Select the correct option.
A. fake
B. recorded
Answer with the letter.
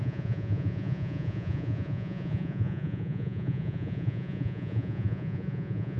A